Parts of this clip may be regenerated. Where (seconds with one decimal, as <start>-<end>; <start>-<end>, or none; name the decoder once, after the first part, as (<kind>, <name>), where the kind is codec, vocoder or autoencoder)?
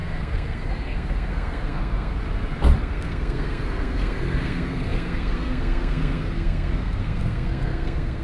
0.0-2.2 (codec, SNAC); 2.8-8.2